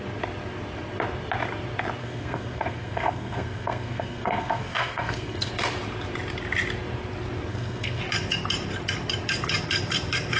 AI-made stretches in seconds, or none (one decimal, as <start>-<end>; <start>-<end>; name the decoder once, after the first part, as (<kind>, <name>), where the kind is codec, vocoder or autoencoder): 2.0-5.5 (codec, SNAC); 7.5-8.0